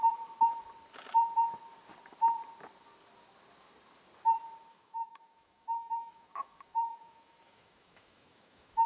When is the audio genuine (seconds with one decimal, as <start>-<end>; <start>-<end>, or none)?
0.0-4.7

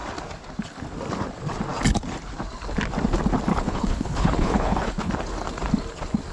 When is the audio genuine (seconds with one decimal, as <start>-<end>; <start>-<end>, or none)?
0.0-3.5; 5.1-6.3

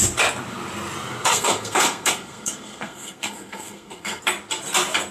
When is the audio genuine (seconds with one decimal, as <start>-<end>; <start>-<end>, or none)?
0.0-1.3; 4.2-5.1

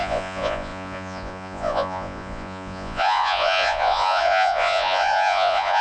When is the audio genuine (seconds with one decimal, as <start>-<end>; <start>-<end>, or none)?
none

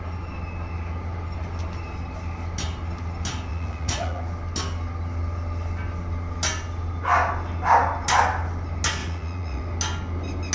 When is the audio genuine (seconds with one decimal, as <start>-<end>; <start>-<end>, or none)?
0.0-3.5; 4.2-9.0; 9.6-10.5